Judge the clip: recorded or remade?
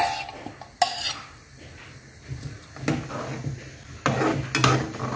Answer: recorded